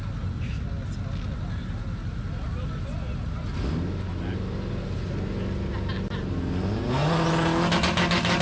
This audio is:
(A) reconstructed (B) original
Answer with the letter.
B